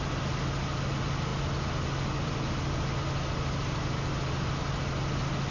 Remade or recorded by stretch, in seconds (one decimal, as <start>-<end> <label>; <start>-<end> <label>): 0.0-5.5 recorded